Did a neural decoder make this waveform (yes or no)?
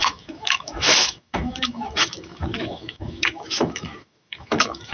yes